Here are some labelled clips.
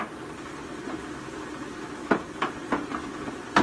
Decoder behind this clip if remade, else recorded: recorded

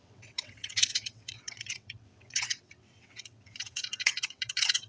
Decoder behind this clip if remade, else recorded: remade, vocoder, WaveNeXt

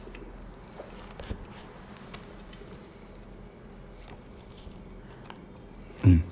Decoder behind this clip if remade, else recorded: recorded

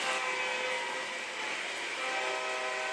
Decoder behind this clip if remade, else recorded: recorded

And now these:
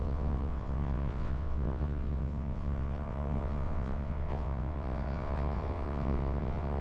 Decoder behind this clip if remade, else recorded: remade, vocoder, WaveNeXt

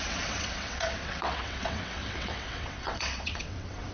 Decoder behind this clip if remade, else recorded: remade, vocoder, WaveNeXt